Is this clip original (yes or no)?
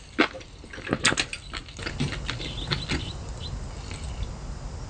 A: yes